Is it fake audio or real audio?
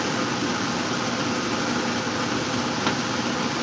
real